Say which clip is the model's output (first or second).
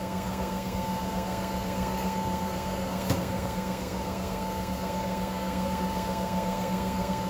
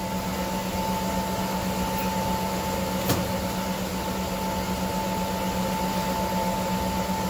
first